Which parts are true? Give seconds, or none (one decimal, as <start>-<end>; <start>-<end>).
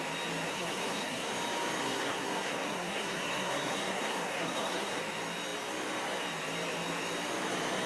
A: 0.0-0.5; 1.3-1.8; 5.0-7.9